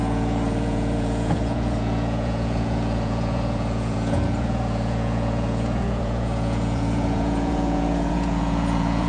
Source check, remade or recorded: remade